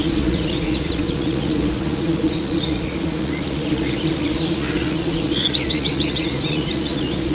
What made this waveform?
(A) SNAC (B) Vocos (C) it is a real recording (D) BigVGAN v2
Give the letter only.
B